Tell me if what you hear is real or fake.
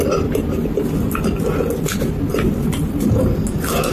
real